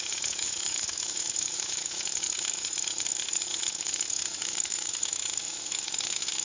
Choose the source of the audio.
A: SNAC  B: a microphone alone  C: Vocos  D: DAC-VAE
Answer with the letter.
D